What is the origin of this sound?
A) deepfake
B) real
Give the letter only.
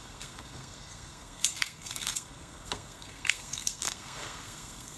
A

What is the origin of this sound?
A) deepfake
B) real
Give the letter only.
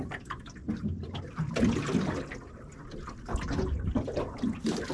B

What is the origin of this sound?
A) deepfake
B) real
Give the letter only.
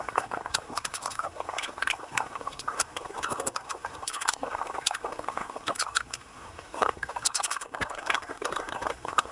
A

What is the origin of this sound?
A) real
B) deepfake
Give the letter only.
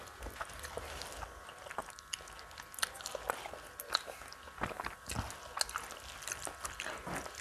A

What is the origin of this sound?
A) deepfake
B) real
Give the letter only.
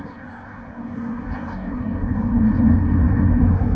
A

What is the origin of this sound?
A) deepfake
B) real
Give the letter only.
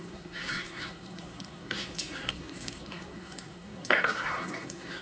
A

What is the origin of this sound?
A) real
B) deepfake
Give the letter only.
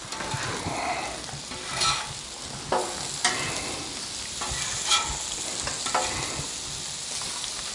A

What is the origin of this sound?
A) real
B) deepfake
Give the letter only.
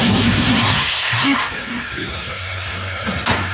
B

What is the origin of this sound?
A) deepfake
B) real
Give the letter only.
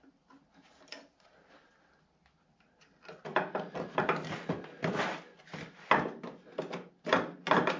B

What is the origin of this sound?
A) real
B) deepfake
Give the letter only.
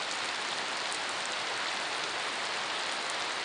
A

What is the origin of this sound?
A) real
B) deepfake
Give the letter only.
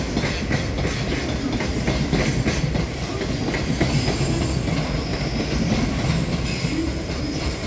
A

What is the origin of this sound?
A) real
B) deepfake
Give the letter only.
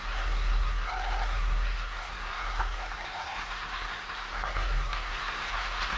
B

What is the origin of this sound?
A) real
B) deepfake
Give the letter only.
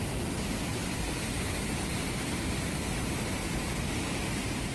A